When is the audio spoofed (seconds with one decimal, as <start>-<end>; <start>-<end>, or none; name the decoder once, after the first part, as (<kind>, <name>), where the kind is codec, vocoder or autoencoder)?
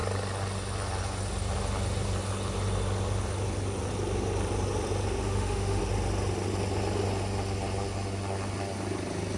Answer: 5.2-5.8 (autoencoder, DAC-VAE)